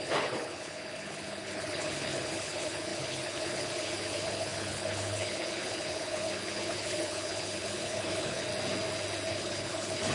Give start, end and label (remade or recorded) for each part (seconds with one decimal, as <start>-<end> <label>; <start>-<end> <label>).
0.0-8.5 remade; 8.5-9.3 recorded; 9.3-10.1 remade